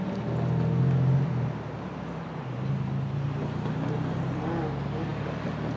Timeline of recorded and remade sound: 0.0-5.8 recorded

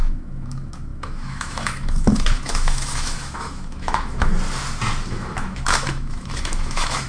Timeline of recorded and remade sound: 0.0-4.3 remade; 4.3-5.1 recorded; 5.1-7.1 remade